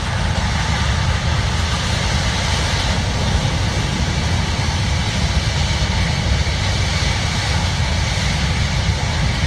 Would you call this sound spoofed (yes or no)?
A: no